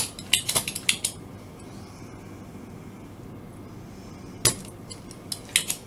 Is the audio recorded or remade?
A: recorded